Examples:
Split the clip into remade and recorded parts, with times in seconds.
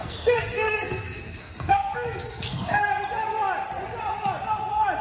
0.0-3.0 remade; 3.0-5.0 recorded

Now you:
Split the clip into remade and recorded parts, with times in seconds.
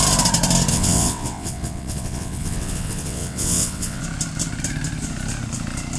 0.0-0.7 recorded; 0.7-4.0 remade; 4.0-6.0 recorded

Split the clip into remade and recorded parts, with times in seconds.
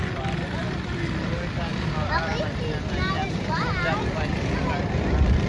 0.0-5.5 recorded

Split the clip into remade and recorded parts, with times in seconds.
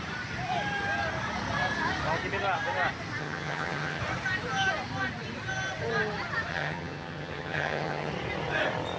0.0-3.2 recorded; 3.2-4.0 remade; 4.0-6.5 recorded; 6.5-8.1 remade; 8.1-9.0 recorded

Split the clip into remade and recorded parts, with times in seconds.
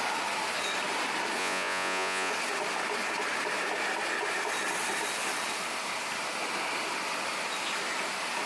0.0-1.4 recorded; 1.4-2.3 remade; 2.3-8.5 recorded